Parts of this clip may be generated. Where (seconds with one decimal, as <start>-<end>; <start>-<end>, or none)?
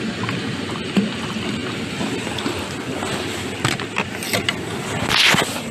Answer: none